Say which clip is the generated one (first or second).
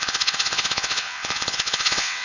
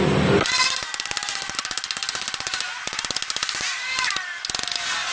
first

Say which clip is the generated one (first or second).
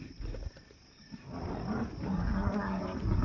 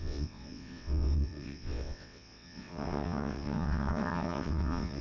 second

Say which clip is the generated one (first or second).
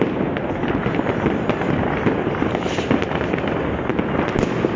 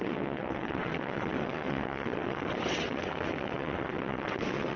second